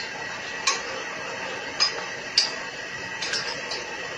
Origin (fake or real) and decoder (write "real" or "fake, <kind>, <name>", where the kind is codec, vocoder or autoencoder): real